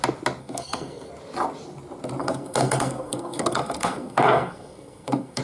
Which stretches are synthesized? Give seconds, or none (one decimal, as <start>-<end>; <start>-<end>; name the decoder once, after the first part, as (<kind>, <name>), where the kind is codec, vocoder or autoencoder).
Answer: 0.4-1.1 (codec, SNAC); 2.2-5.4